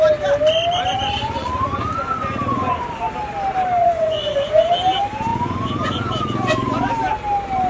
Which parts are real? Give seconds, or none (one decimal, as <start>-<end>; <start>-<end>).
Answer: 0.0-0.9; 3.0-3.8; 4.7-5.3; 6.9-7.7